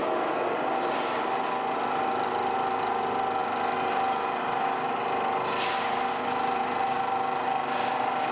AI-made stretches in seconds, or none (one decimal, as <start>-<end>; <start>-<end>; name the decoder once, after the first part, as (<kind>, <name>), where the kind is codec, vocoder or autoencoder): none